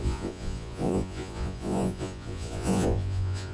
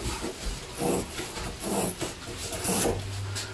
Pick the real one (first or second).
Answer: second